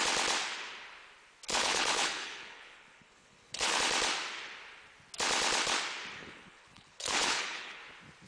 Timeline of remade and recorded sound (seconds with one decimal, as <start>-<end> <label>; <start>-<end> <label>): 0.0-1.5 recorded; 1.5-3.8 remade; 3.8-6.2 recorded; 6.2-7.8 remade; 7.8-8.3 recorded